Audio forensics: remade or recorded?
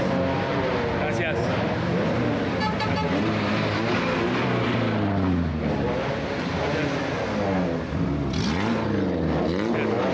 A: recorded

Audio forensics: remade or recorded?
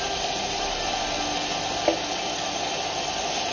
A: recorded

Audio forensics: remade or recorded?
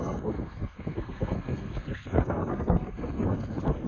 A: remade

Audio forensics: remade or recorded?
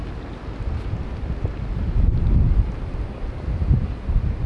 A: recorded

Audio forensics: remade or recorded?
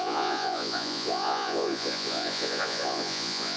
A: remade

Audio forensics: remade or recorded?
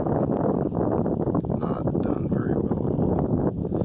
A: recorded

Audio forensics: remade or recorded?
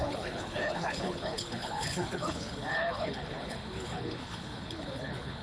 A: remade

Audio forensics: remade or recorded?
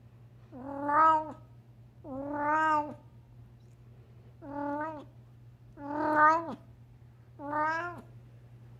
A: recorded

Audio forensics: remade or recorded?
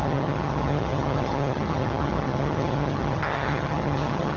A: remade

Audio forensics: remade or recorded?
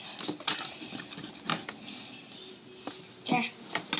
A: recorded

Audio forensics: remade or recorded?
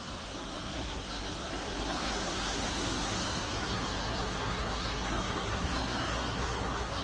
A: remade